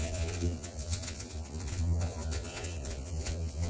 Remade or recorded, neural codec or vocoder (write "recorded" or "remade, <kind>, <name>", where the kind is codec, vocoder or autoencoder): remade, vocoder, Vocos